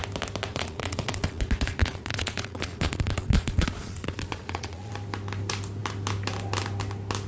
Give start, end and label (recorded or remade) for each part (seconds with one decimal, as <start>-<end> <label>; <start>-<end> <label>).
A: 0.0-0.5 recorded; 0.5-4.9 remade; 4.9-7.3 recorded